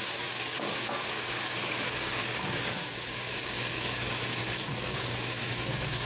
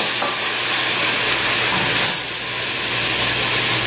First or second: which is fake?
first